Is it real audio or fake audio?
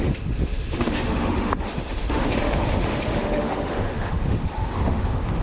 fake